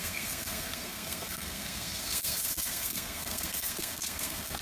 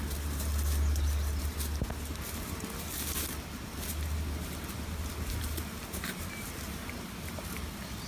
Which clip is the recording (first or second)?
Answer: second